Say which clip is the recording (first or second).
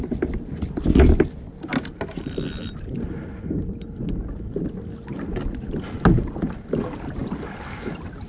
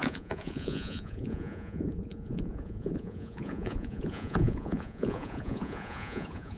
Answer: first